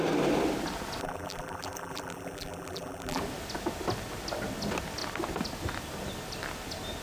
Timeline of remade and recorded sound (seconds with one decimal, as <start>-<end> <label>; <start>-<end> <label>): 0.0-1.0 recorded; 1.0-3.2 remade; 3.2-7.0 recorded